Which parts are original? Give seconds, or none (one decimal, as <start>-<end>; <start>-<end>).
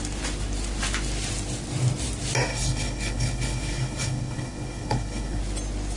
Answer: 0.0-2.5; 5.4-6.0